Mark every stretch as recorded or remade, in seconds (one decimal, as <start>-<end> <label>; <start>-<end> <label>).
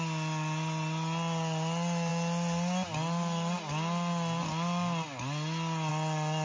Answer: 0.0-6.4 recorded